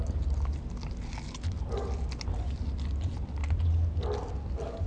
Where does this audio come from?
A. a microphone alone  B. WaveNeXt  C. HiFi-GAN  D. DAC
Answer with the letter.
A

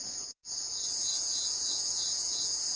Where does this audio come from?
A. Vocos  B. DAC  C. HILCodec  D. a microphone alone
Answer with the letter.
A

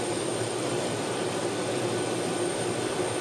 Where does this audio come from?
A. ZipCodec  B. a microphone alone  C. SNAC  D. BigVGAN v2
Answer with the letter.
B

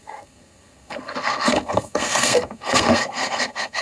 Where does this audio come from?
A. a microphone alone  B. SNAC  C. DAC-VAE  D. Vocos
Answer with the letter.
B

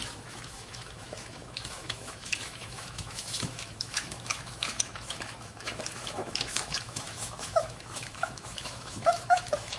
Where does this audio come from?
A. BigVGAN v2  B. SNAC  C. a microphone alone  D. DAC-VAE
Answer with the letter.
D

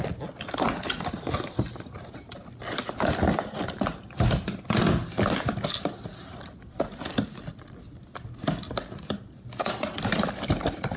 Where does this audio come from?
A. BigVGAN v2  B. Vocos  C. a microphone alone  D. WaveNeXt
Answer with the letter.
C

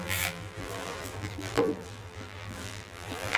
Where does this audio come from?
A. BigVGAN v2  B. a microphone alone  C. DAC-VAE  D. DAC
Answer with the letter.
A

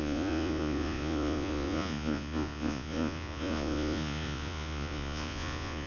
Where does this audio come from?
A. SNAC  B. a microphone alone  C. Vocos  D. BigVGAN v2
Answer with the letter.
C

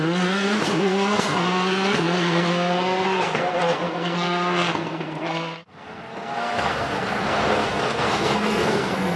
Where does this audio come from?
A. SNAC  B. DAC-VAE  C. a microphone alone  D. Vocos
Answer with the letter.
A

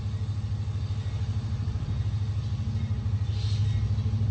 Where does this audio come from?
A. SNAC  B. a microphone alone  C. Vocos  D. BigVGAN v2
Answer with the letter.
B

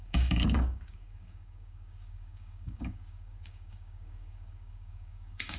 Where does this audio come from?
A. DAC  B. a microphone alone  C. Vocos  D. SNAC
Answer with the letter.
A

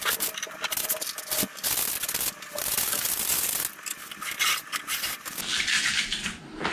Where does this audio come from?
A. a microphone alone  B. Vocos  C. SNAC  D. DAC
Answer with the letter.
A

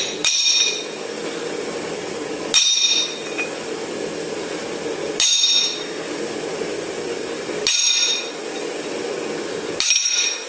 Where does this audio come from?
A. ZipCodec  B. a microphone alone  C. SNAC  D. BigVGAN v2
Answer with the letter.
B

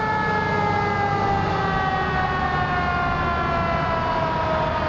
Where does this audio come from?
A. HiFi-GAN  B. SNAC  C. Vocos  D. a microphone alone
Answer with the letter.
D